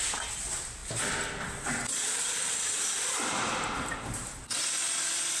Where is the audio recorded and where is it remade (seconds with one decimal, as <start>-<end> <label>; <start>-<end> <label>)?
0.0-5.4 recorded